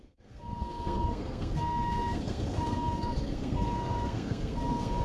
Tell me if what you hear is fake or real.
fake